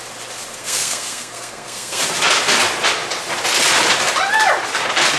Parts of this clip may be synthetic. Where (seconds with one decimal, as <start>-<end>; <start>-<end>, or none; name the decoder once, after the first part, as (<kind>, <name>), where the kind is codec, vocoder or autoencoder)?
0.5-2.0 (codec, SNAC)